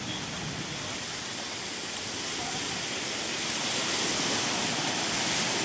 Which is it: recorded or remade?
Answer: recorded